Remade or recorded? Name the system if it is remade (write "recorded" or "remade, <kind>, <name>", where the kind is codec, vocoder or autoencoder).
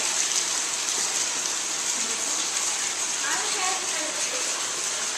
recorded